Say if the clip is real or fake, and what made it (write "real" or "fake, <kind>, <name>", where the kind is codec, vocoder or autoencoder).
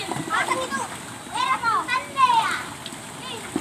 real